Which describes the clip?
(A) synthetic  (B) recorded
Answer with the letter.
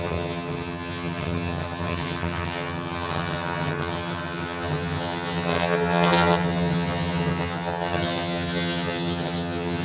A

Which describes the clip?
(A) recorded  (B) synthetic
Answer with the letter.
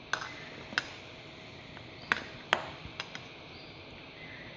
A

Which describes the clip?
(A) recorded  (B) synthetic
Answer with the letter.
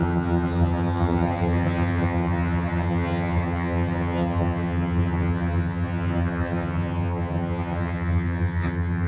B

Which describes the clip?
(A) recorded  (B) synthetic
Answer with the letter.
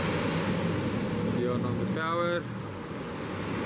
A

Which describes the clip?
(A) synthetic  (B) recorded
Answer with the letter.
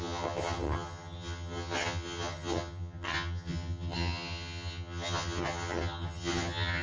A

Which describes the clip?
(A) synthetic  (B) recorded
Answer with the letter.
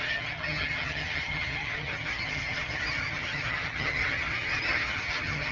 A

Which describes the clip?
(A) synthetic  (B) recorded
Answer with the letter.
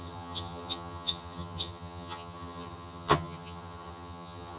A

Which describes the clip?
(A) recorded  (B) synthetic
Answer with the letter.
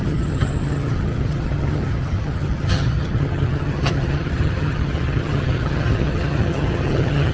B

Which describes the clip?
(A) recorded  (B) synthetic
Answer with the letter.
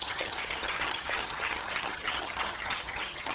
B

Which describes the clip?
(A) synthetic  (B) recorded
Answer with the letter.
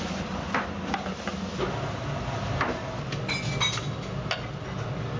B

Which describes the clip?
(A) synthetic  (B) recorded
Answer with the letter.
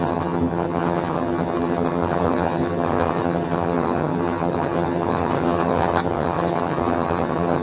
A